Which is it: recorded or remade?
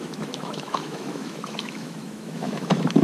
remade